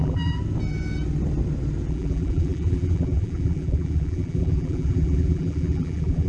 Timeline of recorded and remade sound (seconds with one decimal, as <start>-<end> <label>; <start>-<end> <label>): 0.0-0.4 remade; 0.4-1.9 recorded; 1.9-6.3 remade